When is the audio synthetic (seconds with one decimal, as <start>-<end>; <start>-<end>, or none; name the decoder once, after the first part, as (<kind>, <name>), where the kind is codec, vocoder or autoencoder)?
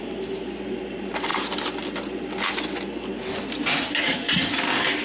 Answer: none